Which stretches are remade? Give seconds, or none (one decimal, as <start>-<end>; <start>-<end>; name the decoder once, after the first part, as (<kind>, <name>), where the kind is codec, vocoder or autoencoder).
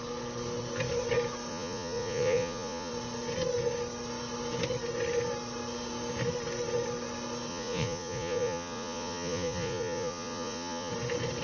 1.5-2.9 (vocoder, Vocos); 7.5-10.9